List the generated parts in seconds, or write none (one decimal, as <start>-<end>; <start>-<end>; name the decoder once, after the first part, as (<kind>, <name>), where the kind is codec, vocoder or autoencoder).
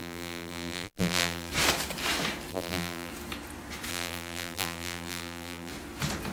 0.0-1.5 (vocoder, BigVGAN v2); 2.5-3.1; 3.9-5.7